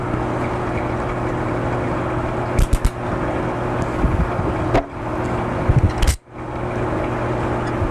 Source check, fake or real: real